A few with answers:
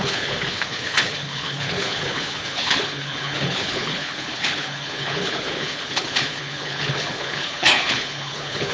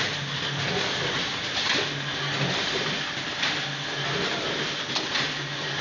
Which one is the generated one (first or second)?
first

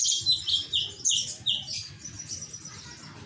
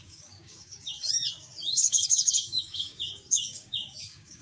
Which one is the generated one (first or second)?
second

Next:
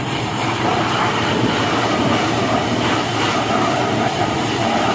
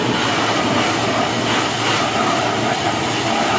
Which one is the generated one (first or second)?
first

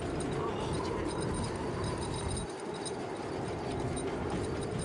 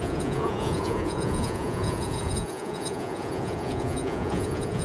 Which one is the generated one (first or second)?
second